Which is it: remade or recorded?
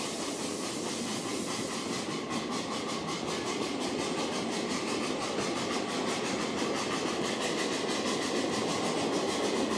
recorded